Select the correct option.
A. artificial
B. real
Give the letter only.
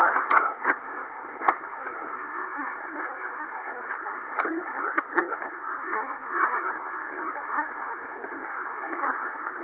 A